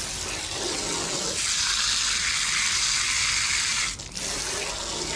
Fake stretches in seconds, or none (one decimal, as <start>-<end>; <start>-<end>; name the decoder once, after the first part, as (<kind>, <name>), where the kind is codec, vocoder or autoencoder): none